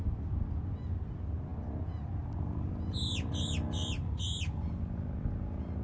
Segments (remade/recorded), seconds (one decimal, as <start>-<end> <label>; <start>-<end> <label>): 0.0-5.8 recorded

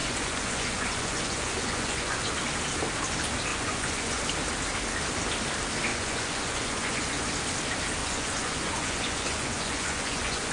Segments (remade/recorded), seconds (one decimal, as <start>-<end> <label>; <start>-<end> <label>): 0.0-2.3 remade; 2.3-3.5 recorded; 3.5-4.2 remade; 4.2-5.9 recorded; 5.9-7.3 remade; 7.3-8.0 recorded; 8.0-10.5 remade

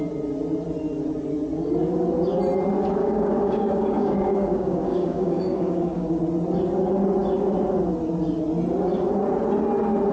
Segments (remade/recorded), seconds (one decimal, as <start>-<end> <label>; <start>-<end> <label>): 0.0-3.0 recorded; 3.0-6.2 remade; 6.2-10.1 recorded

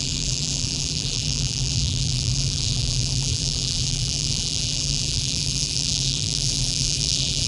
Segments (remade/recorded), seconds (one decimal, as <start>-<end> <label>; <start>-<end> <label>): 0.0-7.5 remade

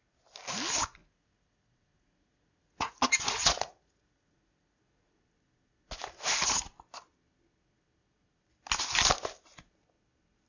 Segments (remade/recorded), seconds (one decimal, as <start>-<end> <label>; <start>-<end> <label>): 0.0-1.0 recorded; 1.0-5.2 remade; 5.2-10.5 recorded

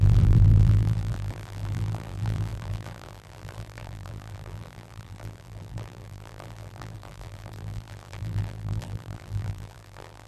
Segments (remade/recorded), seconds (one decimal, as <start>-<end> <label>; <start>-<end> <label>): 0.0-10.3 remade

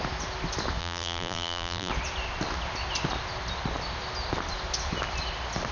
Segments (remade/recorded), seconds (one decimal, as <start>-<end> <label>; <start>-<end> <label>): 0.0-0.8 recorded; 0.8-1.9 remade; 1.9-5.7 recorded